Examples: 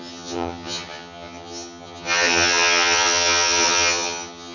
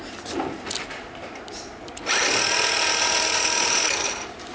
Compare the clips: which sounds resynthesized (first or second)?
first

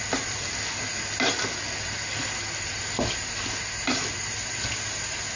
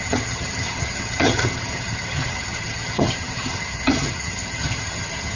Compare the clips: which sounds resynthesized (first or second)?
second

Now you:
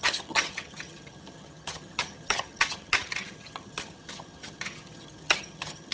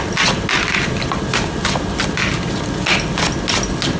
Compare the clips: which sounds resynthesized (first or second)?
first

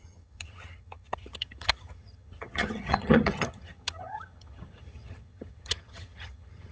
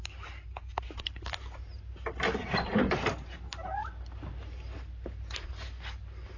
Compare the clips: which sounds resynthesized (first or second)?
first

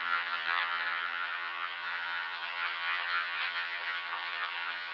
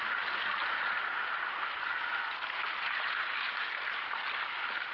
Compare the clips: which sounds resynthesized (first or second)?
first